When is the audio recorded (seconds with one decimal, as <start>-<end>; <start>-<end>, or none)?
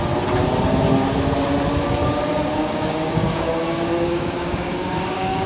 0.0-2.0